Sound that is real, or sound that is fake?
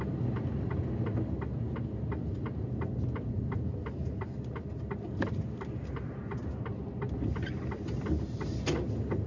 real